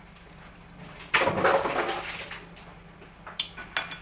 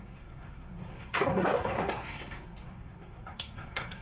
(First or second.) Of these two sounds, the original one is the first